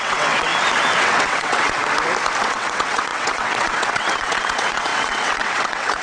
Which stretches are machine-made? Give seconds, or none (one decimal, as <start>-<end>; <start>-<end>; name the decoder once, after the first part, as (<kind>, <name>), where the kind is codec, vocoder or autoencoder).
0.0-0.5 (vocoder, WaveNeXt); 1.0-1.8; 2.4-6.0